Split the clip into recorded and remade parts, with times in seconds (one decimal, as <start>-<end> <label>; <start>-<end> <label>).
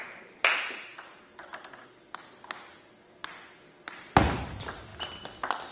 0.0-5.7 recorded